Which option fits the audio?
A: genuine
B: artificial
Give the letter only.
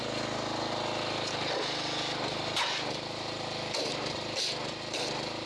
A